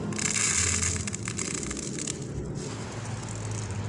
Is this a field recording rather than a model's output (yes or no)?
yes